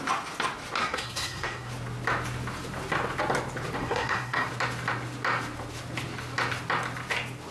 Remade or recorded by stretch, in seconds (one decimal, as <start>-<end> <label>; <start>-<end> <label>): 0.0-0.8 recorded; 0.8-1.7 remade; 1.7-3.8 recorded; 3.8-4.5 remade; 4.5-7.5 recorded